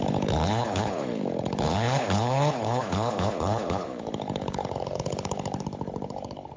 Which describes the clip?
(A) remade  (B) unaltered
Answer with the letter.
A